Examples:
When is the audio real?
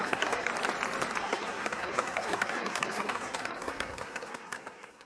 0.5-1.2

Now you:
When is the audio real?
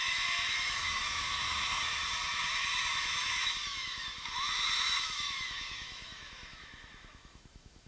none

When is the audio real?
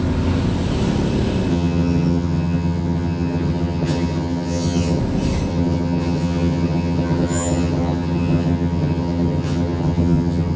0.0-1.5; 5.0-5.5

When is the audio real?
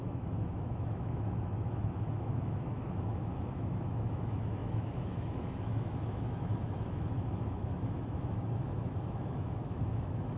none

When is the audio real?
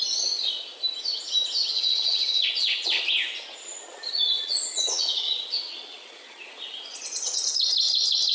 0.0-1.7; 3.0-3.9; 7.4-8.3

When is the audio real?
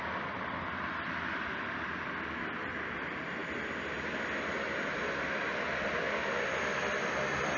0.0-7.6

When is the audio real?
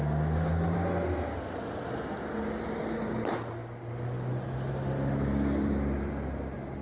0.0-6.8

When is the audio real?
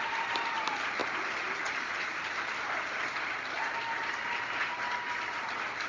1.0-1.7